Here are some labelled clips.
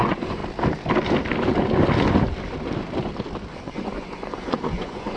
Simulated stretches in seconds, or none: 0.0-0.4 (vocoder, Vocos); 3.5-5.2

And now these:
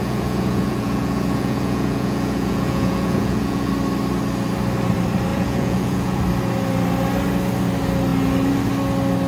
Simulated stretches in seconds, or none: 0.0-3.7 (vocoder, Vocos); 5.3-6.2

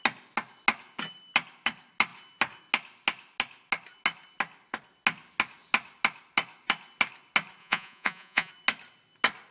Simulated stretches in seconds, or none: 7.6-8.5 (vocoder, Vocos)

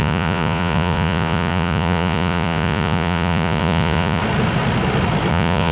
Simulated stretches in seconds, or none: 0.0-4.2 (vocoder, Vocos); 5.3-5.7

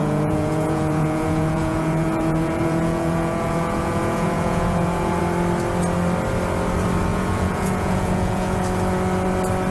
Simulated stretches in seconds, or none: 0.0-5.2 (vocoder, Vocos); 7.1-8.6

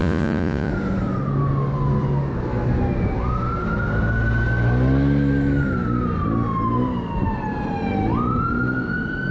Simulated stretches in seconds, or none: 0.0-0.7 (vocoder, Vocos)

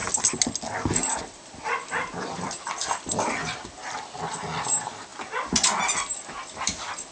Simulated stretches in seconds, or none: none